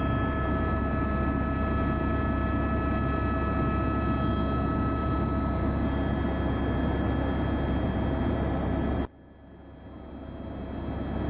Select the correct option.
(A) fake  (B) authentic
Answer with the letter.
B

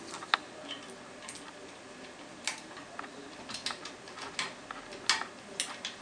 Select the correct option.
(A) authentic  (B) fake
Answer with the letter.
A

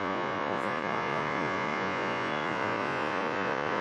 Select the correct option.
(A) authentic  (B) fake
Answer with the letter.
B